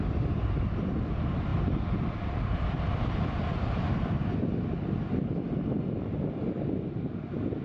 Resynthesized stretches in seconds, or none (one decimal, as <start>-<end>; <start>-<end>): 1.5-5.8